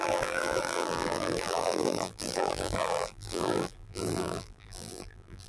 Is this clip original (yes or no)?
no